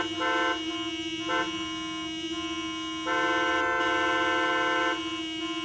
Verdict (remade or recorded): recorded